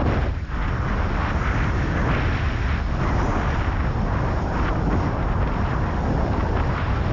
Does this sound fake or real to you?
real